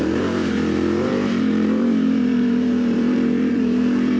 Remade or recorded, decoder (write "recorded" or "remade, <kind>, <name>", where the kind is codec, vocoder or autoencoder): remade, vocoder, BigVGAN v2